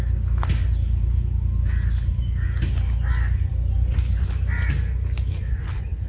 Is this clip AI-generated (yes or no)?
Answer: no